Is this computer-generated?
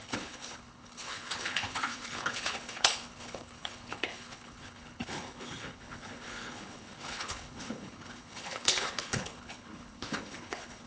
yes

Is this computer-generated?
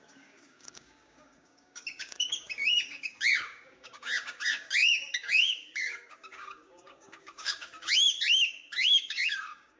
yes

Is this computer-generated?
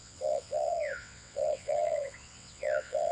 yes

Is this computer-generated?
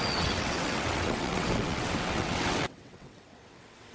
yes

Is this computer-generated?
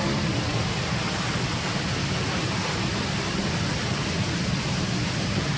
yes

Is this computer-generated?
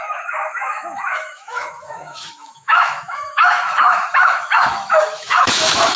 yes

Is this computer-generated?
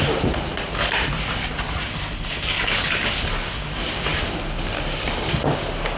no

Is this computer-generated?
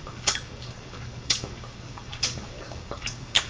yes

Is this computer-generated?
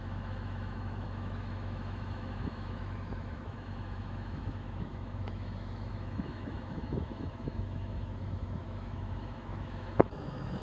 yes